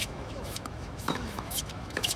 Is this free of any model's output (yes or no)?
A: no